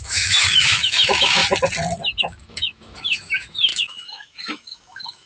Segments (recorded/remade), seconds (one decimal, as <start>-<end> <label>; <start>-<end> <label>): 0.0-1.4 remade; 1.4-2.2 recorded; 2.2-5.3 remade